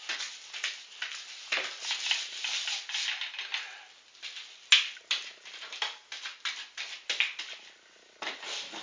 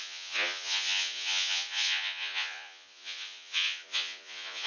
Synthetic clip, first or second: second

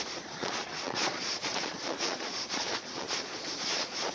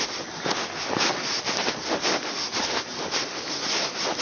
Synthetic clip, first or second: first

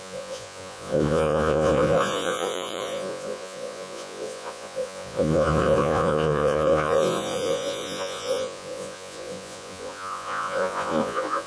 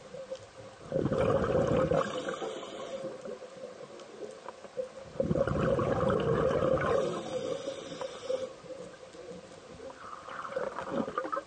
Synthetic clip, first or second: first